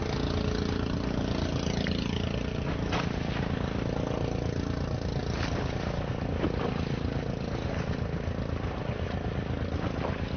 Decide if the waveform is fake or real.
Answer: real